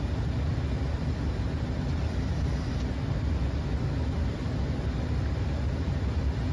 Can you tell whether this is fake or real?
real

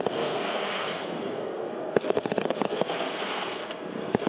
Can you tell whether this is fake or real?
fake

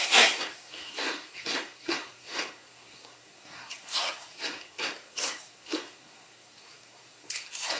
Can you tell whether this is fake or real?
fake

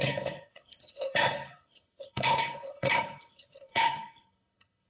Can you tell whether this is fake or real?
fake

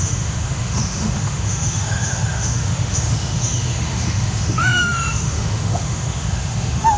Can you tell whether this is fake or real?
fake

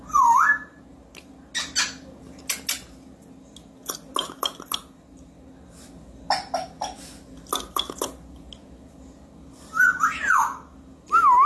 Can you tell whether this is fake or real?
real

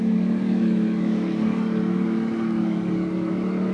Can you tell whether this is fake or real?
fake